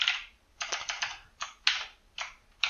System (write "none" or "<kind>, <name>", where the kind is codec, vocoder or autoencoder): none